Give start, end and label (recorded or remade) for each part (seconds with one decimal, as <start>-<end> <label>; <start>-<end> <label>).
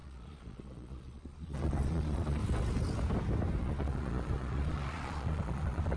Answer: 0.0-2.4 remade; 2.4-3.6 recorded; 3.6-6.0 remade